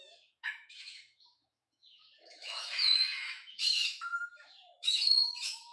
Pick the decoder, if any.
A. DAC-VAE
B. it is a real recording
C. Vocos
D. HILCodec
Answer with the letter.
A